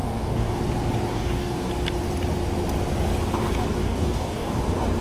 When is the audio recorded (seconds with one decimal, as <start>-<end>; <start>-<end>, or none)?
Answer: 0.6-1.1; 1.7-3.8; 4.6-5.0